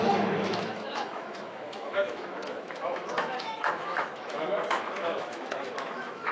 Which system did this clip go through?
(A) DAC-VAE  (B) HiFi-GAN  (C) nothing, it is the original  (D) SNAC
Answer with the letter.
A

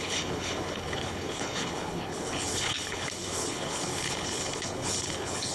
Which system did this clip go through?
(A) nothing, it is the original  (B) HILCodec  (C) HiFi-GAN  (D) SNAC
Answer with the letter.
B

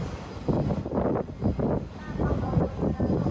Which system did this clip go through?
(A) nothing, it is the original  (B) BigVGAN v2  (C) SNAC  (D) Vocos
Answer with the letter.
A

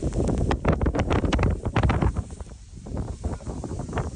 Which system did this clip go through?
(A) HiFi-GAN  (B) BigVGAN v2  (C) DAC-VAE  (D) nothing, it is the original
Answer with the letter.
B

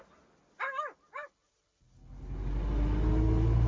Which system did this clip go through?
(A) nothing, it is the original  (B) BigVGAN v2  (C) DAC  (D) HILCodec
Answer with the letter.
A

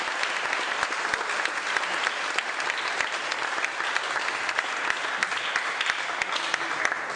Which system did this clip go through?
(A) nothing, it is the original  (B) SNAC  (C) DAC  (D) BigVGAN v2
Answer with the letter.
A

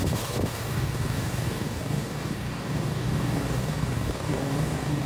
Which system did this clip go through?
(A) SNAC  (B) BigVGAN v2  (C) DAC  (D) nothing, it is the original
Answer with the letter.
C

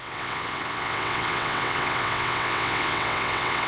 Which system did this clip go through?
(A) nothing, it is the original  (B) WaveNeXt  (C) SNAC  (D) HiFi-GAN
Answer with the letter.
B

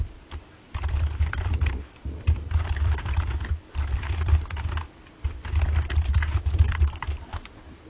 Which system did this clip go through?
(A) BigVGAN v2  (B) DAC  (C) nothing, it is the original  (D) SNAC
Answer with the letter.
A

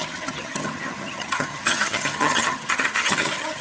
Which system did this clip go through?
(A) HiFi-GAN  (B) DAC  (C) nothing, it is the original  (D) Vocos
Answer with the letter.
A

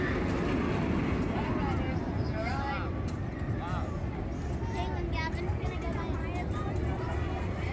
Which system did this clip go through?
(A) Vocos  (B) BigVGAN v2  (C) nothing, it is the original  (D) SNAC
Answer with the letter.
C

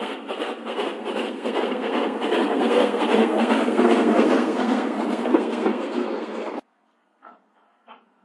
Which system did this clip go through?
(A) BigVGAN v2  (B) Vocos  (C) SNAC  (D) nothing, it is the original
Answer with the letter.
C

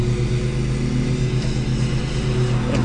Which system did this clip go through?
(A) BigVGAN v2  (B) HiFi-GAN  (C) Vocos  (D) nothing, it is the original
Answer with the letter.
D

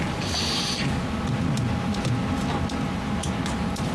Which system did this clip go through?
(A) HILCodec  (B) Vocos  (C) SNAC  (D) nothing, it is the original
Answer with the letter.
D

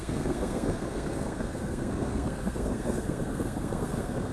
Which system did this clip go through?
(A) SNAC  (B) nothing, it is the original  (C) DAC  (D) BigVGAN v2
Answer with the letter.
A